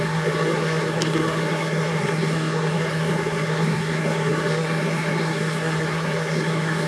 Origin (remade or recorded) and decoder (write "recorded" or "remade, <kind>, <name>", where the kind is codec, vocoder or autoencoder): remade, codec, SNAC